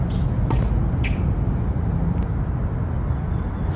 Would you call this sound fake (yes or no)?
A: no